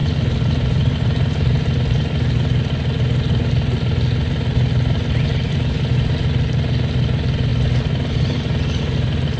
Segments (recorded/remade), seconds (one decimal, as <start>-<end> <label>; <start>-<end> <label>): 0.0-9.4 recorded

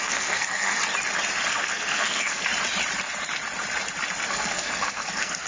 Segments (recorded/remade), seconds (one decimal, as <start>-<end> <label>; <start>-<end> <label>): 0.0-0.8 remade; 0.8-1.5 recorded; 1.5-2.5 remade; 2.5-4.3 recorded; 4.3-5.5 remade